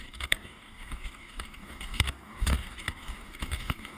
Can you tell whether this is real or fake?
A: fake